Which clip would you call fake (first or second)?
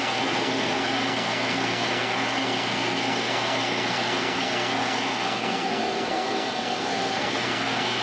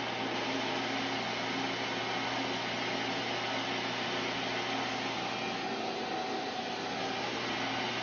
first